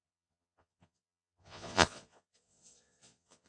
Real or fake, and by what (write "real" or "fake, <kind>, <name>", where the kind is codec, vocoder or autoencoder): fake, vocoder, Vocos